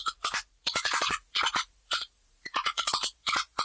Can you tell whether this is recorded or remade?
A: remade